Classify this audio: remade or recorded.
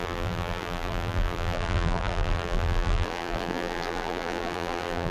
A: remade